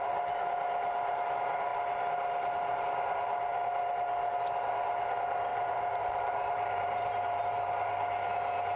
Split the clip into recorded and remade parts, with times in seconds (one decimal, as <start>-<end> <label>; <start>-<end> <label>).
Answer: 0.0-5.5 recorded; 5.5-7.4 remade; 7.4-8.8 recorded